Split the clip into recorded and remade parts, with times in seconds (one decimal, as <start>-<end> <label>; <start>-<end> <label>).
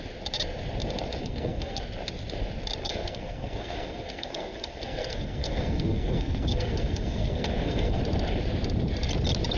0.0-1.2 recorded; 1.2-1.8 remade; 1.8-2.8 recorded; 2.8-8.0 remade; 8.0-9.6 recorded